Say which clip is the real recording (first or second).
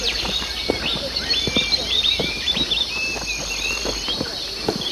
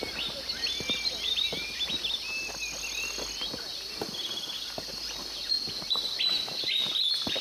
second